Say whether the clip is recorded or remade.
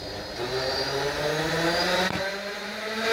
remade